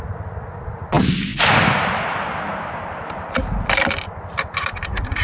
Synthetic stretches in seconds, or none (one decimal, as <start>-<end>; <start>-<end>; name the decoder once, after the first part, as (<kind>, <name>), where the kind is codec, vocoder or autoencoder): none